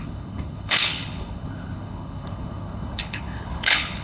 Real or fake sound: fake